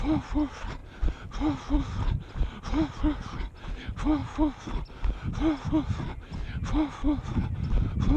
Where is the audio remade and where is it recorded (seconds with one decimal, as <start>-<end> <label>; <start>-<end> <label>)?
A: 0.0-8.2 recorded